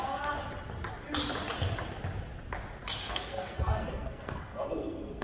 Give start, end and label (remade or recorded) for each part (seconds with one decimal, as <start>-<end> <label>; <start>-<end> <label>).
0.0-0.4 remade; 0.4-3.1 recorded; 3.1-5.2 remade